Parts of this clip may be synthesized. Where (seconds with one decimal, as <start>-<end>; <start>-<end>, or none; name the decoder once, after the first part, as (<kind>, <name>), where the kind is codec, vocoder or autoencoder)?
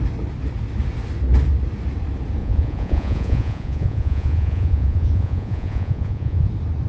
2.4-6.5 (vocoder, Vocos)